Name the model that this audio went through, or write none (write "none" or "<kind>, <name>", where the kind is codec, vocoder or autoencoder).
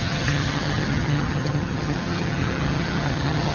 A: vocoder, HiFi-GAN